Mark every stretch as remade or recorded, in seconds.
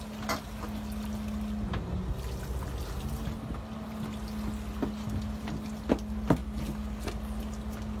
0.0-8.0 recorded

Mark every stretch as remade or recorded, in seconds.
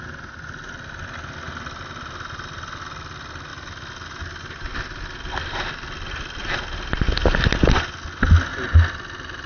0.0-9.5 recorded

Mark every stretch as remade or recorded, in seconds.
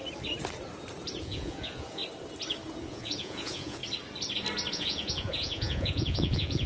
0.0-1.2 recorded; 1.2-2.0 remade; 2.0-2.8 recorded; 2.8-3.8 remade; 3.8-4.7 recorded; 4.7-6.7 remade